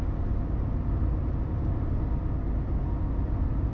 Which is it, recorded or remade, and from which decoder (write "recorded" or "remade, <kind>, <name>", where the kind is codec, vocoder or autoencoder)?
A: recorded